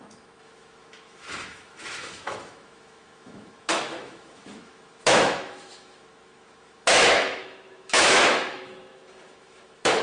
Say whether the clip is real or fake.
fake